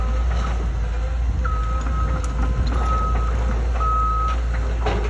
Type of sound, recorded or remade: recorded